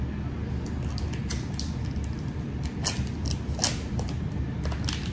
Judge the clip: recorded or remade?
recorded